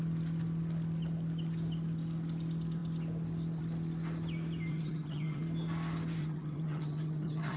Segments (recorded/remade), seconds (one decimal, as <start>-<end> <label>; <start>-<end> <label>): 0.0-4.7 recorded; 4.7-5.4 remade; 5.4-6.2 recorded; 6.2-7.6 remade